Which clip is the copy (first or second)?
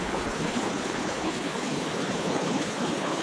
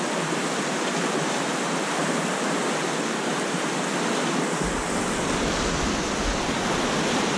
first